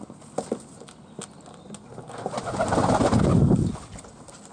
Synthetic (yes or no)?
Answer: no